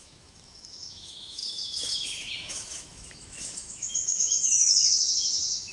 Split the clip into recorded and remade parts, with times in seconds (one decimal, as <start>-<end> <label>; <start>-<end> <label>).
0.0-5.7 remade